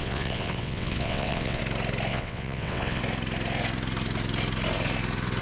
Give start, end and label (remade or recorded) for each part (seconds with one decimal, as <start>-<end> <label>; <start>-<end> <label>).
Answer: 0.0-1.6 remade; 1.6-2.1 recorded; 2.1-3.0 remade; 3.0-5.4 recorded